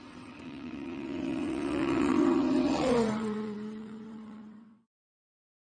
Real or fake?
fake